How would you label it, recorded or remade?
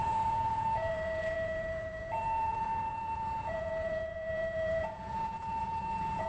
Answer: remade